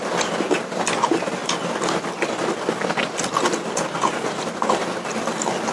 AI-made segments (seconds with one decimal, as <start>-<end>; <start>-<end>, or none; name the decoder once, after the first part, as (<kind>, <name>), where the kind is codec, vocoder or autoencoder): none